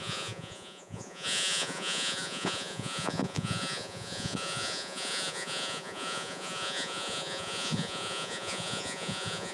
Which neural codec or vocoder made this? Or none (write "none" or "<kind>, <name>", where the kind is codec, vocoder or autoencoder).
vocoder, Vocos